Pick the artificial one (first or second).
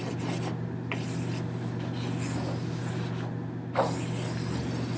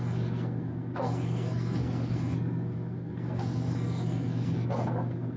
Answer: second